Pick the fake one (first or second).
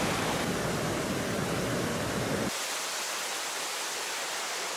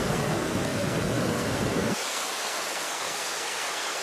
second